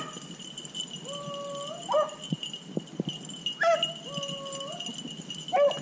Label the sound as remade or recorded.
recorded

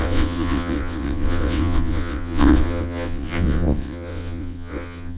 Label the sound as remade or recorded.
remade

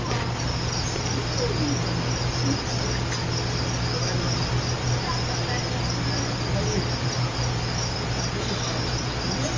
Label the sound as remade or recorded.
recorded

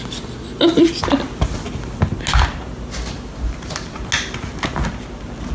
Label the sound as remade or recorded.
recorded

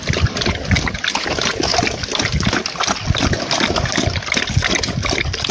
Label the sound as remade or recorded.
recorded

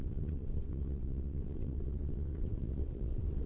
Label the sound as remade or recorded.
remade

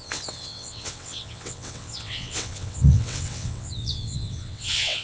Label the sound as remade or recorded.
remade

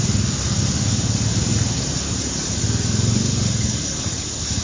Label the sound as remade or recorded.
recorded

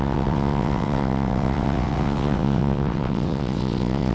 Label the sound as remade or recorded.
remade